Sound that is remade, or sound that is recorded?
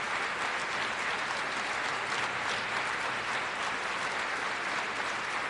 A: recorded